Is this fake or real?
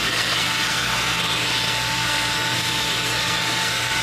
fake